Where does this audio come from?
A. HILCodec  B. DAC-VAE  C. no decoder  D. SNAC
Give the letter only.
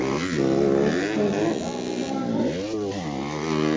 C